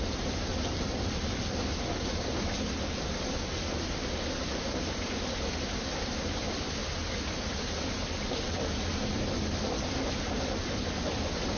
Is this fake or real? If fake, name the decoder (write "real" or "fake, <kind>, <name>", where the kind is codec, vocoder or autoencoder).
real